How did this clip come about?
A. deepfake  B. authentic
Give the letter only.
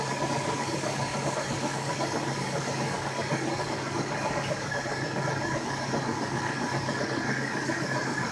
A